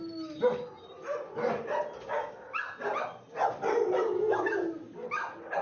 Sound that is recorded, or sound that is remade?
recorded